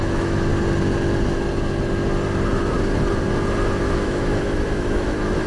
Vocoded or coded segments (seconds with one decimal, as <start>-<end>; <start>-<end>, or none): 0.0-0.5; 3.8-5.5

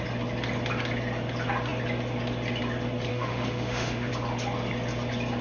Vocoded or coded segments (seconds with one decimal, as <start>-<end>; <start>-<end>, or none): 3.1-4.1

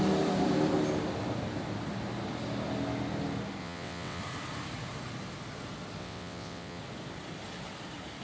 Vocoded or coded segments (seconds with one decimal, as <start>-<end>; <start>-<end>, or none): 3.6-4.2; 6.0-6.8